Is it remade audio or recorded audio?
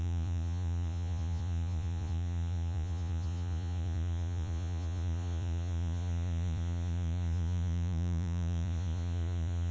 remade